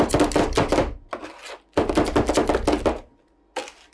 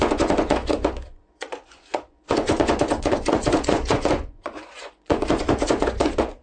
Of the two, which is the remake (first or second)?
second